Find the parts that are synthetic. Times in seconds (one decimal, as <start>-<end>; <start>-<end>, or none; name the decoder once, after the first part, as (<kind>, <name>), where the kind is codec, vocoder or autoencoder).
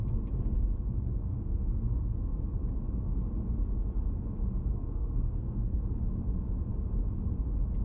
1.3-2.0 (codec, SNAC); 4.7-5.8